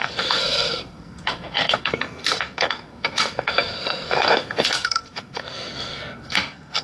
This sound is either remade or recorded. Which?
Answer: remade